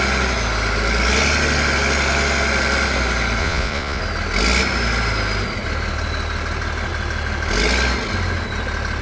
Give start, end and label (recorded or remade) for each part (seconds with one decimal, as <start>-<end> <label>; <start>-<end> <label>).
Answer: 0.0-3.4 recorded; 3.4-4.0 remade; 4.0-9.0 recorded